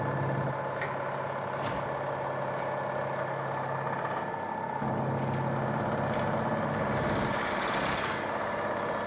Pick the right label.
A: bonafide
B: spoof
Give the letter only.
A